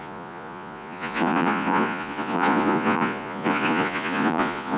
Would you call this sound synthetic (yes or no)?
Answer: yes